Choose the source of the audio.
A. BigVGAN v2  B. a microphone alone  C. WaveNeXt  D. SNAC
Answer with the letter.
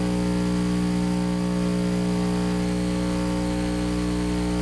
B